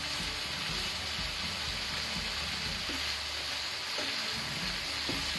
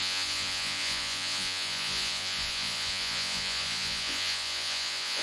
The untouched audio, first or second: first